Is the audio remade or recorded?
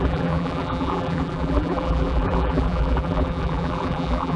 remade